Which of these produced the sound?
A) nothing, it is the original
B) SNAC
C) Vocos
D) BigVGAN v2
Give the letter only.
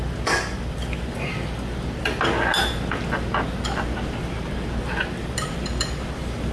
A